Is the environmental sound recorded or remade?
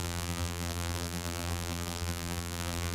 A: remade